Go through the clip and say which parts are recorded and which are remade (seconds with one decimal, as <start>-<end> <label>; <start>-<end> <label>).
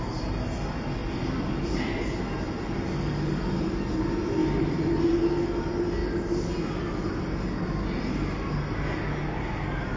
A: 0.0-1.0 recorded; 1.0-2.0 remade; 2.0-4.4 recorded; 4.4-5.0 remade; 5.0-10.0 recorded